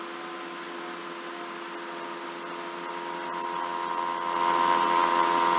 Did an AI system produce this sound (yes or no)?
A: no